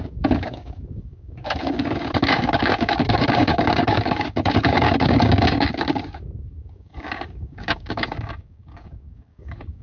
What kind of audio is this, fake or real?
fake